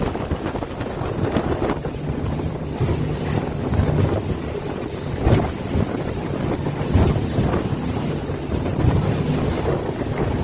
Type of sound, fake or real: real